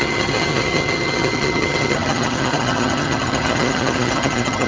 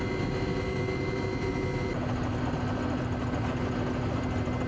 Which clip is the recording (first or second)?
second